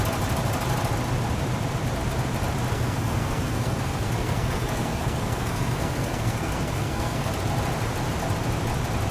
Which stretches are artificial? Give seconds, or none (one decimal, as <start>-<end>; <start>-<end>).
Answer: 2.7-7.3